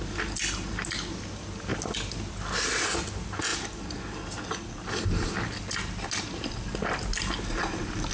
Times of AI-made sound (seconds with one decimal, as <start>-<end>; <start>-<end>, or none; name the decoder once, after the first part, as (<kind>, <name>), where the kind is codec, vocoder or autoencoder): none